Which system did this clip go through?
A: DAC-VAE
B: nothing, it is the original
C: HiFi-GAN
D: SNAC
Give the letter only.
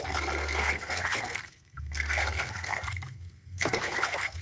D